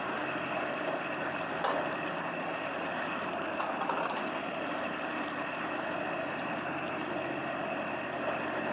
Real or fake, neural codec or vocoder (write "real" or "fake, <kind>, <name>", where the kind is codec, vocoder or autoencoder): real